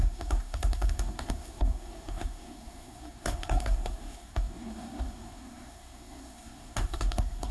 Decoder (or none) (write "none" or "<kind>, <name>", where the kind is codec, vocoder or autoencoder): codec, SNAC